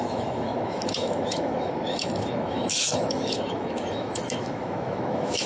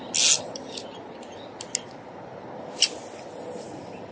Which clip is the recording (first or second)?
second